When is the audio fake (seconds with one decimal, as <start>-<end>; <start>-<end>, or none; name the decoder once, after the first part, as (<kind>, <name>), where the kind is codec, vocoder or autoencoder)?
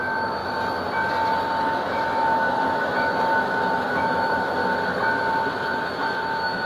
0.0-0.4 (autoencoder, DAC-VAE); 1.6-4.6; 6.0-6.7